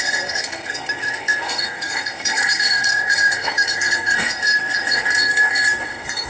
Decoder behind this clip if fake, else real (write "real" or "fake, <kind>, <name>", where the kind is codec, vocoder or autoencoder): fake, codec, SNAC